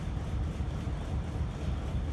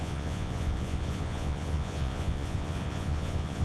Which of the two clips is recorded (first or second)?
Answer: first